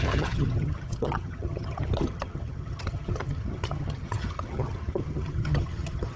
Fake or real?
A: fake